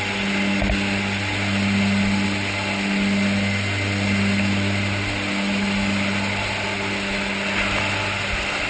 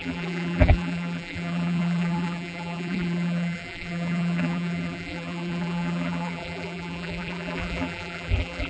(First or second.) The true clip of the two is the first